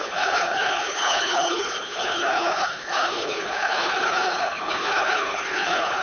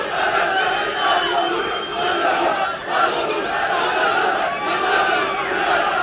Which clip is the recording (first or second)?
second